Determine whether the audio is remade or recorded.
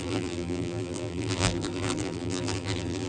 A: remade